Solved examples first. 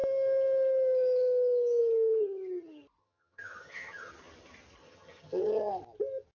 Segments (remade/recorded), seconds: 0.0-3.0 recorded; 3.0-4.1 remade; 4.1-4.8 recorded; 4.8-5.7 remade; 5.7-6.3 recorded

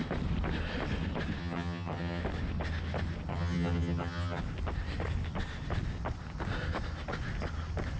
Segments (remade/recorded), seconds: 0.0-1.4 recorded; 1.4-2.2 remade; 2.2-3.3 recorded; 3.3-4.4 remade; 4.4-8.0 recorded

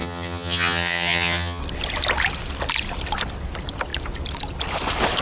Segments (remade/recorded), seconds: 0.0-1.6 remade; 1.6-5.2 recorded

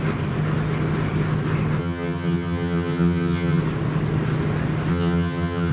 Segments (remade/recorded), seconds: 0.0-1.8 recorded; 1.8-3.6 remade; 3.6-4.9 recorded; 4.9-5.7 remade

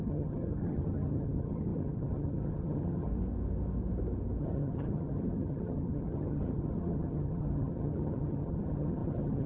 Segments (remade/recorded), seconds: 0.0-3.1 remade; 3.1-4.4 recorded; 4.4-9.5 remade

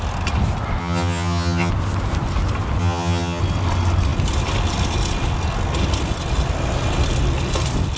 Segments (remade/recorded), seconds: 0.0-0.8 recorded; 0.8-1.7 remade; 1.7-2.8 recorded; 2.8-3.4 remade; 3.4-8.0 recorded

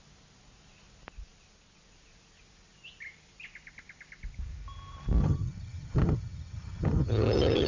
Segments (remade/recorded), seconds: 0.0-5.2 recorded; 5.2-7.7 remade

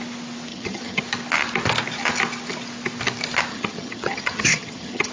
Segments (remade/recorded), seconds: 0.0-0.5 recorded; 0.5-1.0 remade; 1.0-3.5 recorded; 3.5-5.1 remade